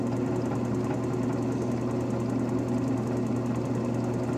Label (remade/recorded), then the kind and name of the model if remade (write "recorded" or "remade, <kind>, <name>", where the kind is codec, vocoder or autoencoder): recorded